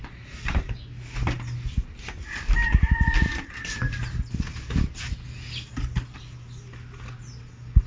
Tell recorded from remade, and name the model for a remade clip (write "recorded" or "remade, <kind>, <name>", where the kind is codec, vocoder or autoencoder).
recorded